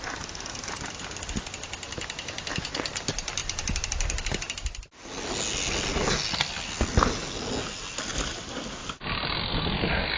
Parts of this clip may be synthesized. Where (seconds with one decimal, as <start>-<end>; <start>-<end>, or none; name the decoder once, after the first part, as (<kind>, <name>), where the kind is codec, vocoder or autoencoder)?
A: none